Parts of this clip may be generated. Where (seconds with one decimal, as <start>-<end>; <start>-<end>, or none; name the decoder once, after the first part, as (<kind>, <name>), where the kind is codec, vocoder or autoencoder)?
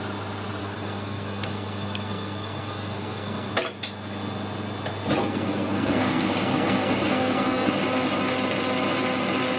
0.6-3.5 (codec, SNAC); 5.2-7.7